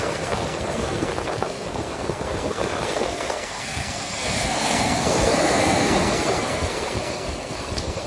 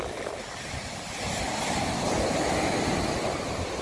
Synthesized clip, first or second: first